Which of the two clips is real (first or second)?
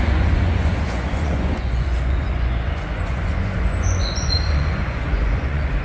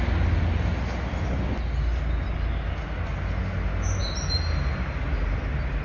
second